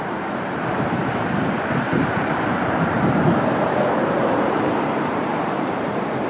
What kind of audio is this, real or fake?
fake